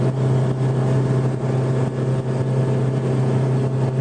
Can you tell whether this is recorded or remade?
recorded